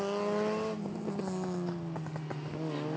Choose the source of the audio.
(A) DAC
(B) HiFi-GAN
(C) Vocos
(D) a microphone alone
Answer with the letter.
D